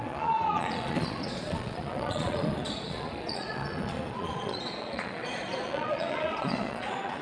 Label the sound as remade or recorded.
remade